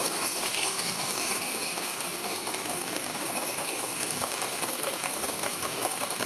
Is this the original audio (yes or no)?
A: no